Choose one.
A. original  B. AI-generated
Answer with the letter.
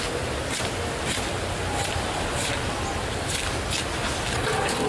A